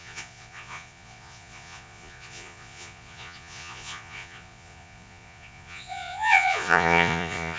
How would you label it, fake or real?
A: fake